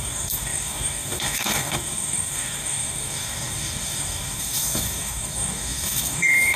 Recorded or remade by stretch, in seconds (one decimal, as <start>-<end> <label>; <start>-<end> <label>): 0.0-6.6 remade